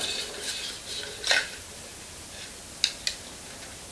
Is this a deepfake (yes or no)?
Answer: no